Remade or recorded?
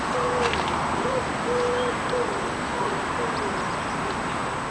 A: recorded